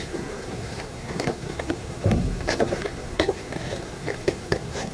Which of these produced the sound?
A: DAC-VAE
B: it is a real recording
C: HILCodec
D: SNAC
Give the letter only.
D